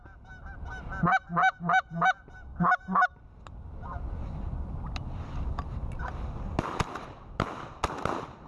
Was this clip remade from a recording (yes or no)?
no